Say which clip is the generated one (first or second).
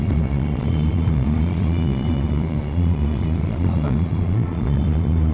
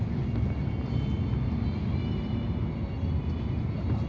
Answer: first